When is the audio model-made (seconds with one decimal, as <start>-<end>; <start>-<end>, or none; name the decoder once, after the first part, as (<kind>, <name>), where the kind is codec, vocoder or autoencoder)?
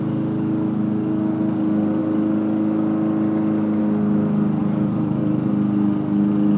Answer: 4.6-5.5 (vocoder, BigVGAN v2)